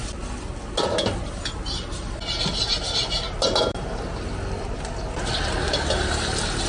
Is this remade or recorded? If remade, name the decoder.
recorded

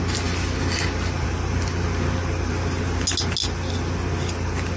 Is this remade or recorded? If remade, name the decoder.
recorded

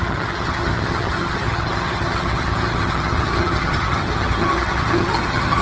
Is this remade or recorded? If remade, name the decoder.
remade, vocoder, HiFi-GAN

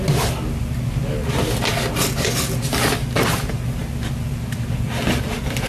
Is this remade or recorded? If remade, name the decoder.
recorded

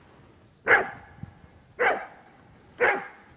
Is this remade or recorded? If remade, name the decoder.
recorded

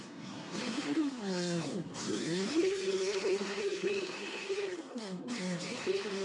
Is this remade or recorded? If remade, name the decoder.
remade, codec, SNAC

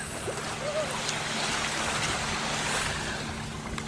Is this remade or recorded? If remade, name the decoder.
recorded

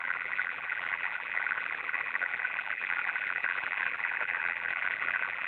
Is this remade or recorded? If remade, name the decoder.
remade, vocoder, BigVGAN v2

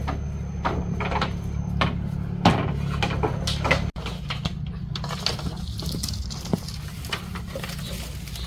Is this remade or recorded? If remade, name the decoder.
recorded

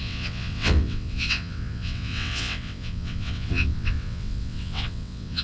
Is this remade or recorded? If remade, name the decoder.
remade, vocoder, WaveNeXt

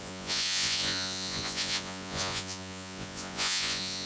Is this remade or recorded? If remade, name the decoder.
remade, vocoder, Vocos